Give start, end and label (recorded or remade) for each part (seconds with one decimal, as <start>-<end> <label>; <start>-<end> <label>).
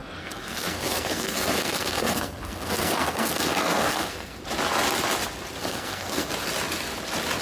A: 0.0-4.4 remade; 4.4-5.6 recorded; 5.6-6.3 remade; 6.3-7.4 recorded